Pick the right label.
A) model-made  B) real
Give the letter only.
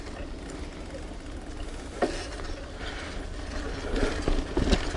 B